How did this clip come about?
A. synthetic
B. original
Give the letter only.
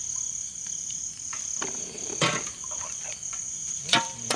A